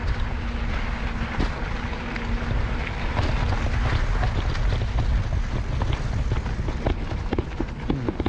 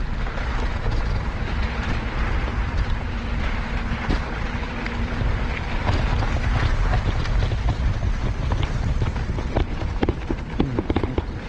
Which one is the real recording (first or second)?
first